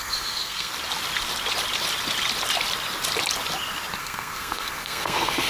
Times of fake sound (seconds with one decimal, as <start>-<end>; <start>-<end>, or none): 0.0-0.7; 4.0-5.5